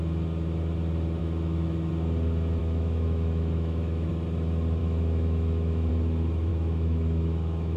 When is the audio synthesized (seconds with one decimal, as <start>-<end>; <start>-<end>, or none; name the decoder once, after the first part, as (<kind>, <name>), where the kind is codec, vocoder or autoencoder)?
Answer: 1.2-1.9 (autoencoder, DAC-VAE); 2.6-4.1; 4.8-5.9; 6.5-7.8